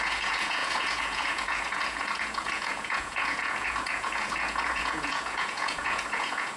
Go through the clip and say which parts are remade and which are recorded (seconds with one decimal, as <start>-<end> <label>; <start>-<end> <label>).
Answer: 0.0-6.6 remade